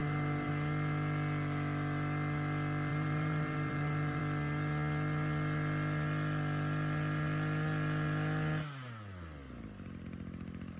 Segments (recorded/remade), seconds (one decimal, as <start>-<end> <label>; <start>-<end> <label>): 0.0-0.5 remade; 0.5-2.9 recorded; 2.9-4.2 remade; 4.2-10.8 recorded